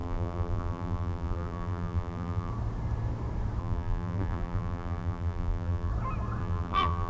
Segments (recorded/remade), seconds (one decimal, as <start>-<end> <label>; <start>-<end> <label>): 0.0-2.5 remade; 2.5-3.6 recorded; 3.6-5.9 remade; 5.9-6.4 recorded; 6.4-7.1 remade